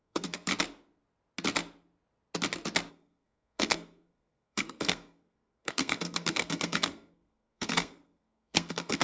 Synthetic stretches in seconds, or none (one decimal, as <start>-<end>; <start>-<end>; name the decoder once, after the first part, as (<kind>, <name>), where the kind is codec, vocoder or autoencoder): 0.0-0.5 (codec, SNAC); 2.9-9.0